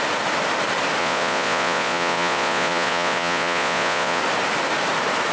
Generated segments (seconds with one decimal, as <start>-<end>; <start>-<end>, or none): 1.0-4.2